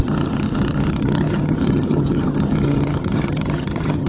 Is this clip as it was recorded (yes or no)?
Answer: no